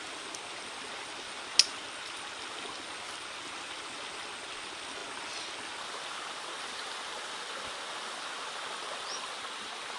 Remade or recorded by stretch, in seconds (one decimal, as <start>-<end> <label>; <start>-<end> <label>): 0.0-10.0 recorded